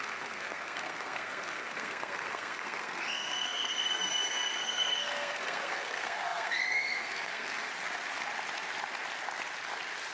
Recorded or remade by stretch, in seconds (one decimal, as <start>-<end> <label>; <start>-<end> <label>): 0.0-7.7 remade; 7.7-10.1 recorded

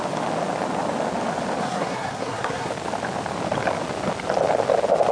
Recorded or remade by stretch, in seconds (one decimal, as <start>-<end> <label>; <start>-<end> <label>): 0.0-1.6 recorded; 1.6-2.7 remade; 2.7-5.1 recorded

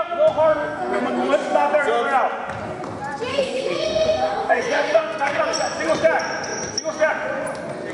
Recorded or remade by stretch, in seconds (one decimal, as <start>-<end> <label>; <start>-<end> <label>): 0.0-0.5 recorded; 0.5-1.0 remade; 1.0-3.3 recorded; 3.3-5.4 remade; 5.4-7.9 recorded

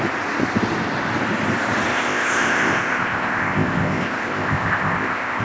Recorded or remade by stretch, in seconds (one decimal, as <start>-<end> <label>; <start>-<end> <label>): 0.0-1.9 recorded; 1.9-5.4 remade

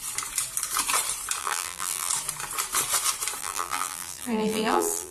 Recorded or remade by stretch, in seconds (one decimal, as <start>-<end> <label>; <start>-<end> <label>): 0.0-1.4 recorded; 1.4-2.1 remade; 2.1-3.4 recorded; 3.4-5.1 remade

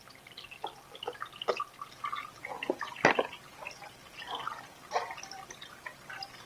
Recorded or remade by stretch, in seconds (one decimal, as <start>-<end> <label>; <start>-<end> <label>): 0.0-6.5 recorded